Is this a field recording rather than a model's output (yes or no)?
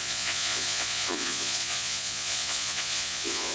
no